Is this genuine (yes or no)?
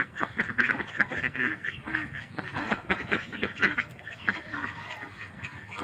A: no